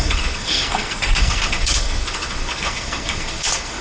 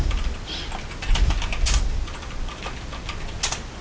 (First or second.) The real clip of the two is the second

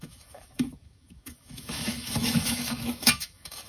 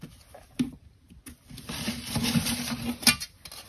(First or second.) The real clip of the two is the second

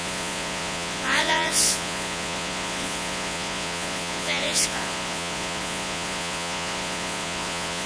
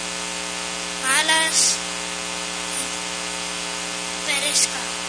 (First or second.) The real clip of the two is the second